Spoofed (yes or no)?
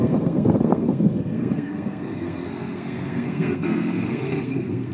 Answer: yes